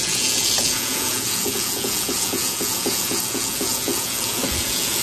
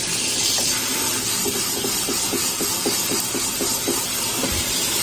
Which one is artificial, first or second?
first